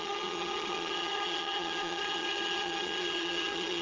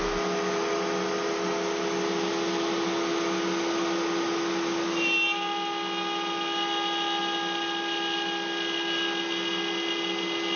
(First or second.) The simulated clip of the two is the first